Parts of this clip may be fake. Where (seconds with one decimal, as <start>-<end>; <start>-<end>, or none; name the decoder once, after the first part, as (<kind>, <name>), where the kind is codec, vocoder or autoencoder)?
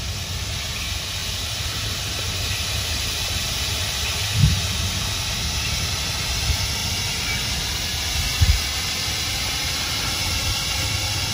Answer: 1.2-3.6 (vocoder, BigVGAN v2)